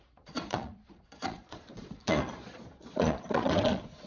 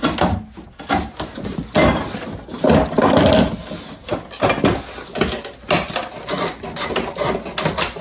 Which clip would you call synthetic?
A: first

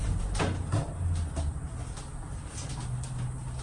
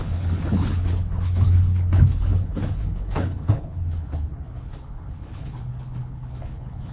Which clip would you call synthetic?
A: second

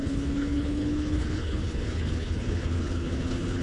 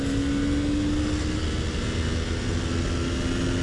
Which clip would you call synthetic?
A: first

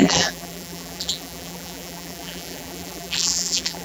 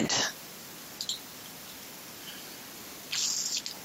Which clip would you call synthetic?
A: first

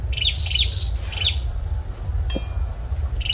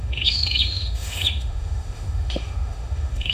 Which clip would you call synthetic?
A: second